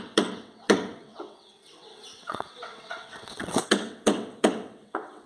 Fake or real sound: fake